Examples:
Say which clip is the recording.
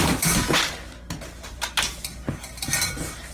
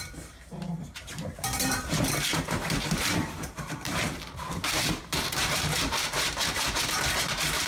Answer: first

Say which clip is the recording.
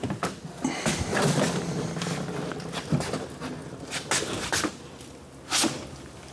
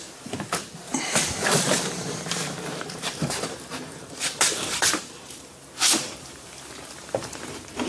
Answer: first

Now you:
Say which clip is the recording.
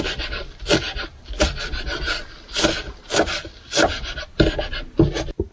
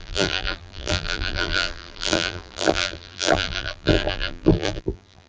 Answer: first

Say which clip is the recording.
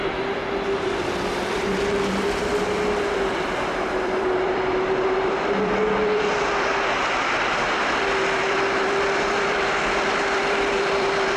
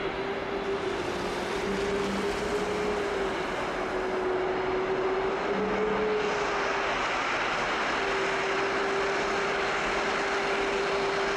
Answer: second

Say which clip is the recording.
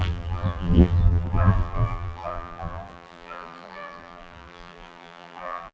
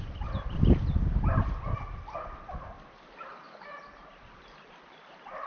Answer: second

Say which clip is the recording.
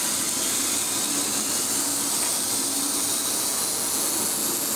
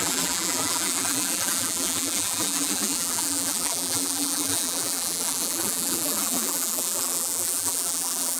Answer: first